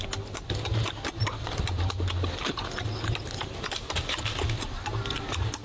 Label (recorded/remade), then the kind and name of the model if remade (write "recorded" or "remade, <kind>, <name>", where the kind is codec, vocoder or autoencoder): recorded